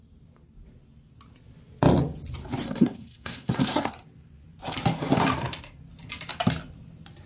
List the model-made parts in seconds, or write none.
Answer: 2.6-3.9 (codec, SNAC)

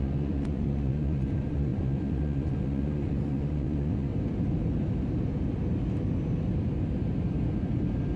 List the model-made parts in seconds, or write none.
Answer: 0.0-4.1 (vocoder, Vocos)

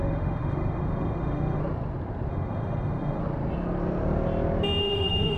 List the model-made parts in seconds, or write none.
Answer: 0.0-1.6 (autoencoder, DAC-VAE); 2.3-3.2; 4.8-5.4

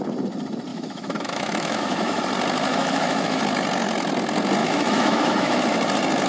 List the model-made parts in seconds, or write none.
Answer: 0.7-2.2 (autoencoder, DAC-VAE); 2.7-3.4; 4.6-5.6

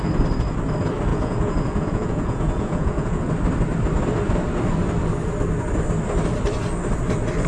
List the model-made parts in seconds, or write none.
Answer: 1.1-3.2 (vocoder, Vocos)